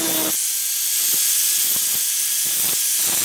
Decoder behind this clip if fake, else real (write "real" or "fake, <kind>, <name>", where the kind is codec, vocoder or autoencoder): real